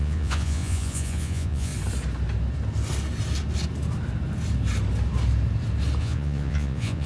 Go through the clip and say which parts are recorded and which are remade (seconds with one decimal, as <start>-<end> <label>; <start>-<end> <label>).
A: 0.0-1.7 remade; 1.7-6.0 recorded; 6.0-7.1 remade